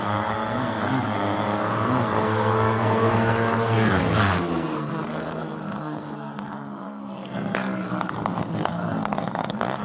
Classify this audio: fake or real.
fake